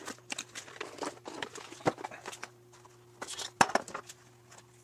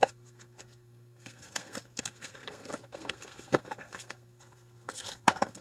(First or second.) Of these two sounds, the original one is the first